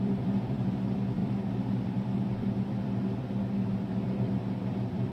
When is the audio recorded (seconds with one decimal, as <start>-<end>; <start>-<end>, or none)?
none